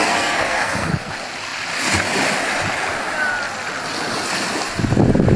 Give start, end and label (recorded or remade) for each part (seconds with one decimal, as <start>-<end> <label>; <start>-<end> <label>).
0.0-1.1 remade; 1.1-5.4 recorded